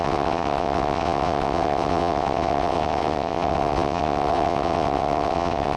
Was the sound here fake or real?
fake